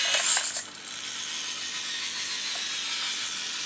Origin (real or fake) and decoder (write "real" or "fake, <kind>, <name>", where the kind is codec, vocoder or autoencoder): real